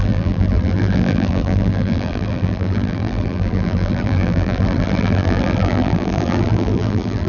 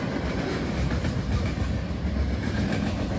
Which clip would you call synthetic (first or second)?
first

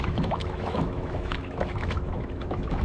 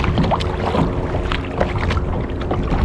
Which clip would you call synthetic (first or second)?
first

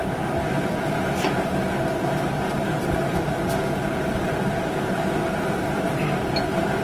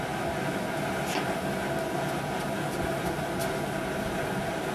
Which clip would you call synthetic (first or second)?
first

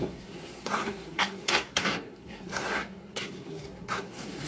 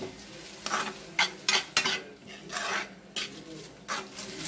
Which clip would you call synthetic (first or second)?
first